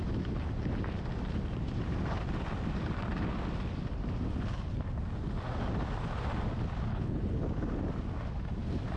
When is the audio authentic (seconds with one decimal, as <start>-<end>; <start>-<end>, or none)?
0.0-6.9; 7.4-9.0